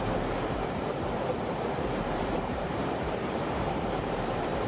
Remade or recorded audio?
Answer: remade